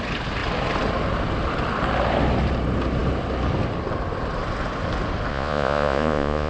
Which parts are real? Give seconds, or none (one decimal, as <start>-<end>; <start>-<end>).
0.0-5.3